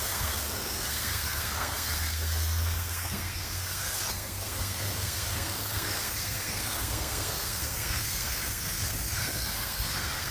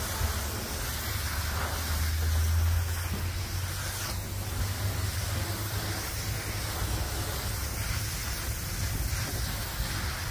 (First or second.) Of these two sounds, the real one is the second